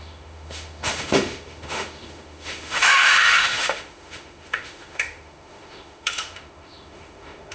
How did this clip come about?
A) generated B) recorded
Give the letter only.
A